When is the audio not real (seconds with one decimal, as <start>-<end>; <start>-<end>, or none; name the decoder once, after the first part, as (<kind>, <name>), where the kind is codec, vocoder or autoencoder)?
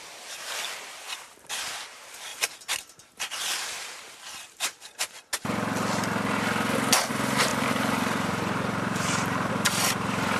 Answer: 0.0-2.3 (vocoder, BigVGAN v2); 7.1-10.4